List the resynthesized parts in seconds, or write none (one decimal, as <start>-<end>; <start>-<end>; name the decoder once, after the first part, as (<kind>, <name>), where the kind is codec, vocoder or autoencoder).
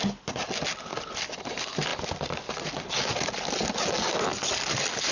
0.9-1.5 (vocoder, BigVGAN v2)